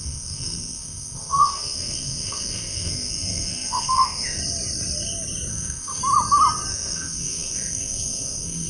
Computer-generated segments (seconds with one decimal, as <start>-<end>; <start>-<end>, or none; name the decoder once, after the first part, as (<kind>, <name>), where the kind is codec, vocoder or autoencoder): 0.0-4.4 (codec, SNAC); 5.5-6.0; 6.7-8.7